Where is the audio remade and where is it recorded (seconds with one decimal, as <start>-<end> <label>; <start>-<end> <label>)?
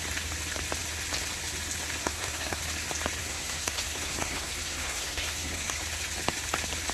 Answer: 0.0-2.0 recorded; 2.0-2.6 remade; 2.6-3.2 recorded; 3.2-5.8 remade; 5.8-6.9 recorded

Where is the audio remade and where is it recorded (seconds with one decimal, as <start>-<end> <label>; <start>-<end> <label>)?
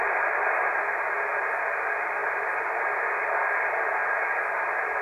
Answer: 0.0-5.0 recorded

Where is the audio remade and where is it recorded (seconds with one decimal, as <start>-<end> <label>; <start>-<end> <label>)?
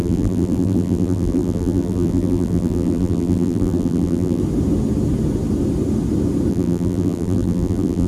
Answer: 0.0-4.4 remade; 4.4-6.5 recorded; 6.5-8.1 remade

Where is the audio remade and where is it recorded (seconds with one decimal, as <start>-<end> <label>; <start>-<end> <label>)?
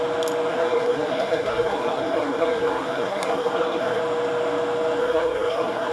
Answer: 0.0-0.5 recorded; 0.5-4.0 remade; 4.0-5.0 recorded; 5.0-5.9 remade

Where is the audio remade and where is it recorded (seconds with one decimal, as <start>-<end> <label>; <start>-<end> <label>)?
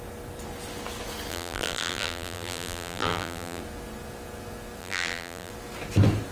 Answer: 0.0-1.3 recorded; 1.3-3.6 remade; 3.6-4.8 recorded; 4.8-5.5 remade; 5.5-6.3 recorded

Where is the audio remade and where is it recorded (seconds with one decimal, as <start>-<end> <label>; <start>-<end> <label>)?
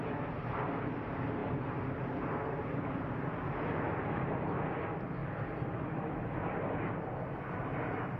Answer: 0.0-8.2 recorded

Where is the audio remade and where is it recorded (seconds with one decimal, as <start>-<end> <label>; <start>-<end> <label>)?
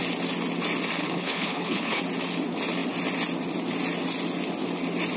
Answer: 0.0-1.0 recorded; 1.0-2.0 remade; 2.0-5.2 recorded